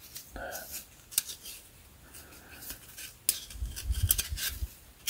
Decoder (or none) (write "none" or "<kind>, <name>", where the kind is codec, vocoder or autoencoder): none